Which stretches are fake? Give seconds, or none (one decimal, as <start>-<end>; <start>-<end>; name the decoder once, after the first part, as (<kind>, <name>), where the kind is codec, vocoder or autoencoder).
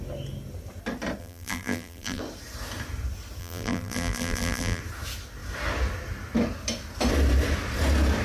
1.2-2.2 (vocoder, BigVGAN v2); 3.4-4.8